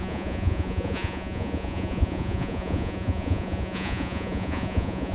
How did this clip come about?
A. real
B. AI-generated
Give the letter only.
B